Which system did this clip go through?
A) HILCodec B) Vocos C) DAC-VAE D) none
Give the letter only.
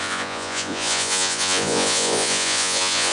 B